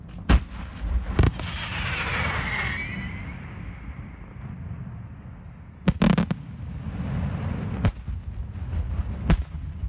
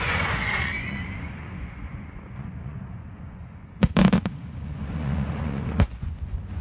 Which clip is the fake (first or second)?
second